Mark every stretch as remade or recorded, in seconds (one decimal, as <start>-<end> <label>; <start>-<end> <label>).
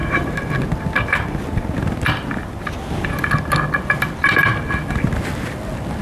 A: 0.0-0.5 remade; 0.5-2.4 recorded; 2.4-5.0 remade; 5.0-6.0 recorded